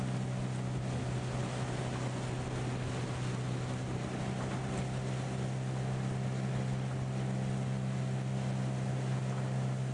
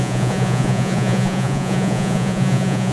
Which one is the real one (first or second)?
first